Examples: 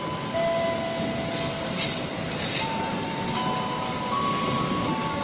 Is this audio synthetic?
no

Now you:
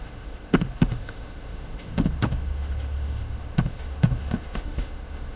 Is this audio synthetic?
yes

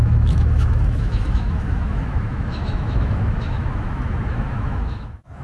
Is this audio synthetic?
yes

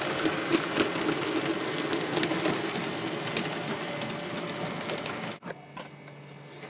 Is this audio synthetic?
no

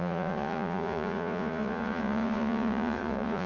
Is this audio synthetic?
yes